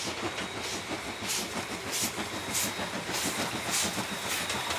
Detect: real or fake real